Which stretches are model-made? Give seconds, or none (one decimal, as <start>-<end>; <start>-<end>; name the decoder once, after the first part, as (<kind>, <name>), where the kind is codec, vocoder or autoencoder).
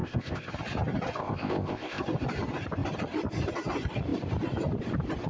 0.0-0.5 (codec, ZipCodec); 1.2-2.0